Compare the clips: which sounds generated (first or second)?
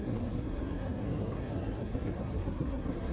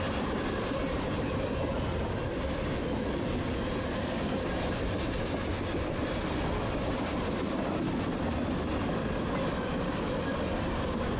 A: first